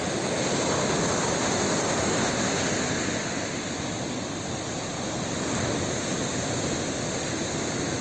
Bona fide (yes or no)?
yes